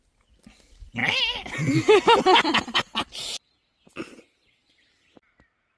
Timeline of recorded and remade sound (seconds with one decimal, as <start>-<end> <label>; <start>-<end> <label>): 0.0-5.8 recorded